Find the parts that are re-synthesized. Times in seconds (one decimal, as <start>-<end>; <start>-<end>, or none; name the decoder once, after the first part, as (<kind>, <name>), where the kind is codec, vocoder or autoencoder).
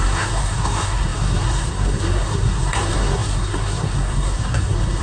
0.0-5.0 (codec, SNAC)